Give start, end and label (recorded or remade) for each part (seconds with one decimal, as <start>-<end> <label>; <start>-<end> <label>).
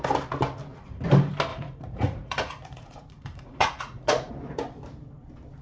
0.0-1.5 recorded; 1.5-4.3 remade; 4.3-5.6 recorded